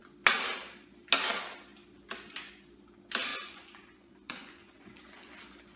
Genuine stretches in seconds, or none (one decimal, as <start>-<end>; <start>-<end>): 0.0-3.3; 5.3-5.8